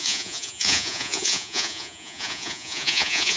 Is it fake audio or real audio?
fake